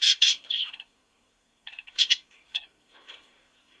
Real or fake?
fake